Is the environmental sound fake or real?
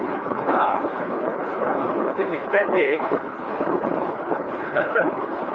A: fake